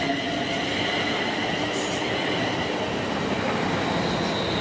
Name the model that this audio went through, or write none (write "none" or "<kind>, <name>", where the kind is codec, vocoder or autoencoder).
none